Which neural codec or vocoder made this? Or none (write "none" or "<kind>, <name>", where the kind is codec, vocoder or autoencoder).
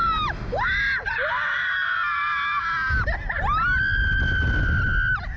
none